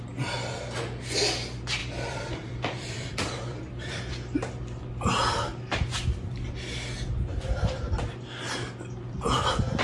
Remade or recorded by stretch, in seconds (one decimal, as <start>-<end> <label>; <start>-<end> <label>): 0.0-1.8 recorded; 1.8-4.1 remade; 4.1-7.3 recorded; 7.3-8.0 remade; 8.0-9.8 recorded